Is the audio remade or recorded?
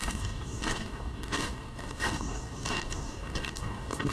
remade